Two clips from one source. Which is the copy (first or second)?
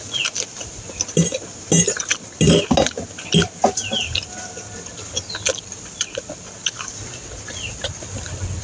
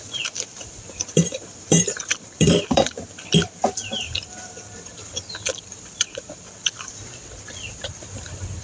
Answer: second